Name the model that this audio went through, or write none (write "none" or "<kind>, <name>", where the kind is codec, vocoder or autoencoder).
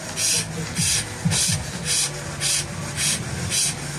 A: none